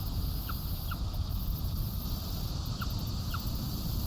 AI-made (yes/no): no